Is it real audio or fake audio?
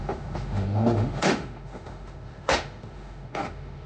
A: fake